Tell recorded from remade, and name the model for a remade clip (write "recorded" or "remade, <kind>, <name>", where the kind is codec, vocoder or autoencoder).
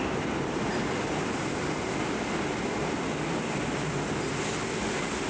recorded